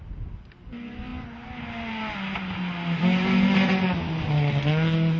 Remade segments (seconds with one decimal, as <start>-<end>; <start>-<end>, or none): none